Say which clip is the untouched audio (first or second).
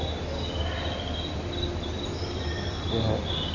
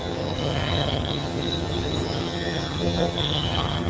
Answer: first